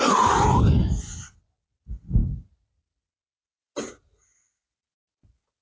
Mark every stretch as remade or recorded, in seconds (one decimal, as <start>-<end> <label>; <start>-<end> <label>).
0.0-5.6 recorded